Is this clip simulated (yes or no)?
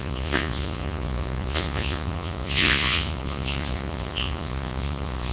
yes